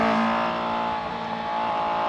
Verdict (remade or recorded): recorded